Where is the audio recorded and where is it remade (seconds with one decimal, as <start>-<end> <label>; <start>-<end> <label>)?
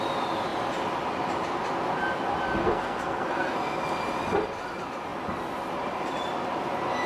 0.0-2.6 recorded; 2.6-3.8 remade; 3.8-7.1 recorded